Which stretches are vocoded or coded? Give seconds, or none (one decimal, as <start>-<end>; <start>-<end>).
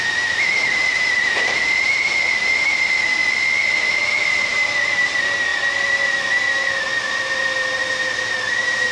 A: 0.0-3.2; 3.8-5.5; 7.2-7.8; 8.5-8.9